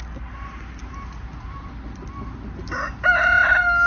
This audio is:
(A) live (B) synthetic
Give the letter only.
A